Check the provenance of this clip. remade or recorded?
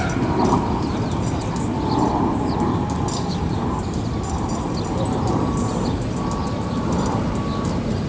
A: recorded